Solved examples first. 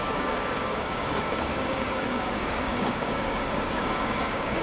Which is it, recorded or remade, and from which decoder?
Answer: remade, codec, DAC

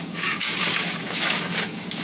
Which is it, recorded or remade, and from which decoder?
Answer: remade, codec, DAC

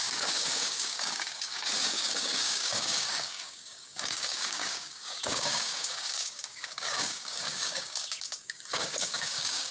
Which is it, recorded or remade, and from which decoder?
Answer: remade, codec, DAC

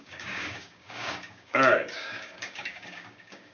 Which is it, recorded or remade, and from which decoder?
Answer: remade, codec, DAC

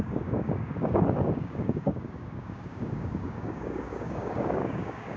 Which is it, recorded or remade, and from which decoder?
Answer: remade, codec, DAC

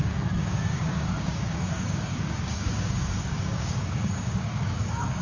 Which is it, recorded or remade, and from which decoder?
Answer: remade, codec, DAC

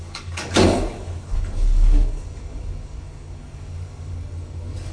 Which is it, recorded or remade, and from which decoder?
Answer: remade, codec, DAC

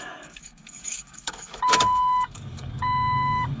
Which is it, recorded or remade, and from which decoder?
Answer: remade, codec, DAC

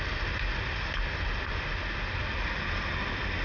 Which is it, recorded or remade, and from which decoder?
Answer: recorded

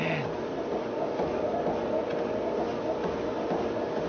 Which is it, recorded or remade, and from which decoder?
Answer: recorded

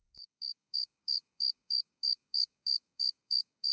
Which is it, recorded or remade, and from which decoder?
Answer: remade, codec, DAC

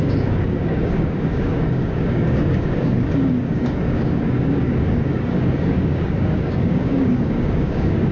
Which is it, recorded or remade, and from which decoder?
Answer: remade, codec, DAC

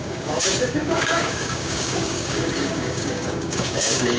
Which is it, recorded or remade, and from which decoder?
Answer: remade, codec, DAC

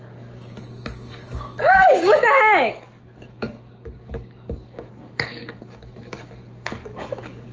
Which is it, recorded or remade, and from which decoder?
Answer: remade, codec, DAC